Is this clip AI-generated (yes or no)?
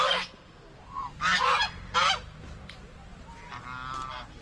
no